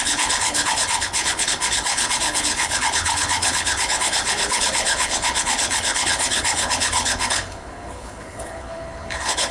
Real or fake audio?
fake